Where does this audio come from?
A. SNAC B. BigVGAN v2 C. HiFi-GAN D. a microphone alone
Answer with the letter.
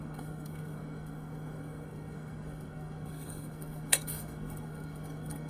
A